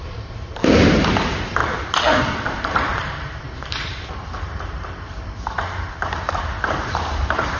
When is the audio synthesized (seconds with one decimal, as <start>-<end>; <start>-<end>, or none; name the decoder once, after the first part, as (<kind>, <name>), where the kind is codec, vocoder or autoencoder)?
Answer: 0.0-1.6 (vocoder, BigVGAN v2); 2.2-7.6